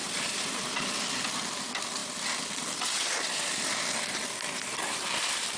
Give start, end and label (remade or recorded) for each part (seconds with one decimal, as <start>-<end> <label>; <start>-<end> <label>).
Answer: 0.0-0.9 remade; 0.9-5.6 recorded